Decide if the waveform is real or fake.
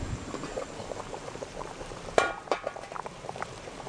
fake